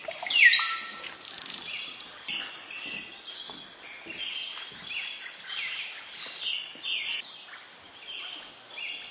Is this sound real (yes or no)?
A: yes